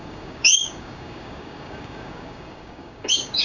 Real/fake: fake